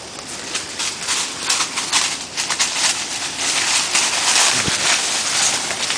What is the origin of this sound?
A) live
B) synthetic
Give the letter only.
A